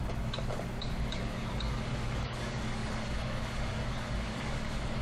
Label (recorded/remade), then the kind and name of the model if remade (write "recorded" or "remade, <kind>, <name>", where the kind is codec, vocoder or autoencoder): remade, codec, DAC